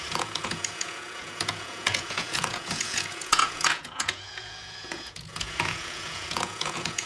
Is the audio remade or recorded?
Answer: remade